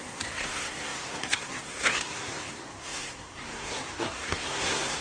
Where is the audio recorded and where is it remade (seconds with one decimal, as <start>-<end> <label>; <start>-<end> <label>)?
0.0-5.0 remade

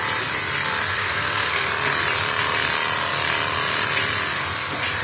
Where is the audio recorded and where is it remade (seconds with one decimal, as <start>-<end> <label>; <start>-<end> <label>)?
0.0-0.9 recorded; 0.9-1.7 remade; 1.7-5.0 recorded

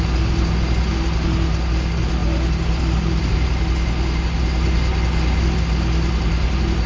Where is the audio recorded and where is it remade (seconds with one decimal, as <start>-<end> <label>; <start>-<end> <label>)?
0.0-6.9 recorded